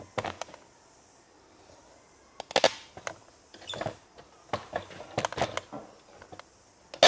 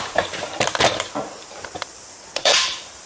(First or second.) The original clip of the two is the first